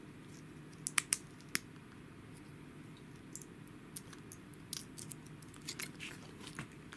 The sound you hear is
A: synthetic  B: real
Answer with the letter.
B